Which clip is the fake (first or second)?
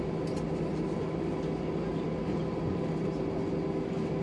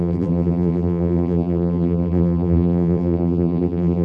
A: second